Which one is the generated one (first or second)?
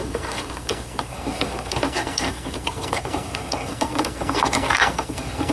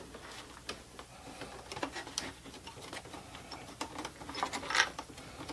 first